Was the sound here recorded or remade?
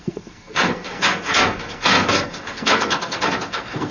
remade